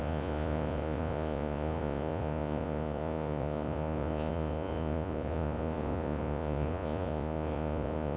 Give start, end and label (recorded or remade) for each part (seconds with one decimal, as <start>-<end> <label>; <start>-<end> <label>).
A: 0.0-8.2 remade